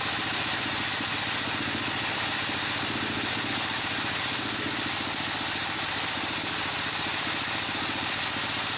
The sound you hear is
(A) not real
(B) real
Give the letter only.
B